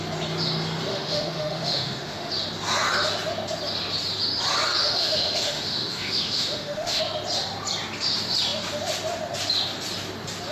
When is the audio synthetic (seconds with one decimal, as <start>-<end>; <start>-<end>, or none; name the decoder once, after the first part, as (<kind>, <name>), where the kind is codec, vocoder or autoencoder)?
0.9-2.3 (autoencoder, DAC-VAE); 4.8-7.0